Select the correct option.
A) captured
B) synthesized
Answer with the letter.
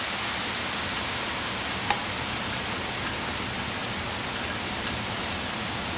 A